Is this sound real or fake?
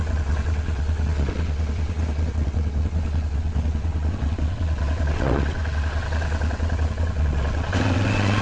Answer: fake